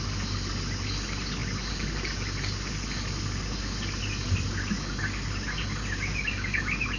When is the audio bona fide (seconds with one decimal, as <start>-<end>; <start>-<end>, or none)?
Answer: 0.0-7.0